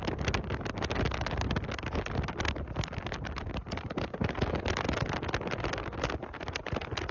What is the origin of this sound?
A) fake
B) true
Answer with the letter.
B